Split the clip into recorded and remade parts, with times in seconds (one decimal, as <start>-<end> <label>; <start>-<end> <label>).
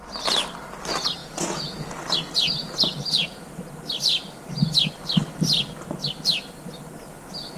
0.0-1.2 recorded; 1.2-2.0 remade; 2.0-2.6 recorded; 2.6-3.6 remade; 3.6-7.6 recorded